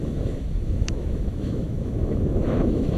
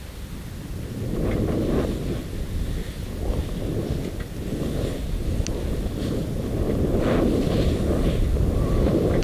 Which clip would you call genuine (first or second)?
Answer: second